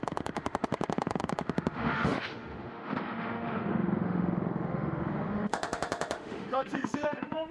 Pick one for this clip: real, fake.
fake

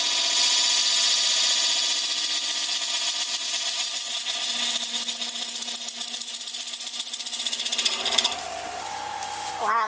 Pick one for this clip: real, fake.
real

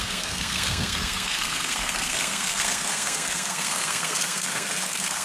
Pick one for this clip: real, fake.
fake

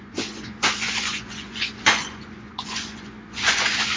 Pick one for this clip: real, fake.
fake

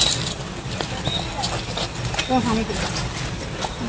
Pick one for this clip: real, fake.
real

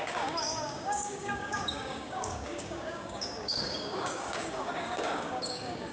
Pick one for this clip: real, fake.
fake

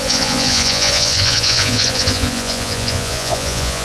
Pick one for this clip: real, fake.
fake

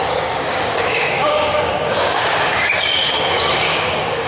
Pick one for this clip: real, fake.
fake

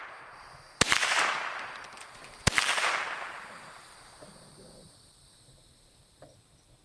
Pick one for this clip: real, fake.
fake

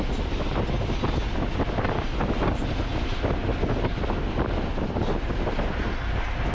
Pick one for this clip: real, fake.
real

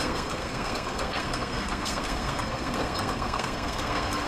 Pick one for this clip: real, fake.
fake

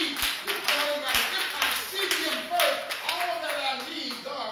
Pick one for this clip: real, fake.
real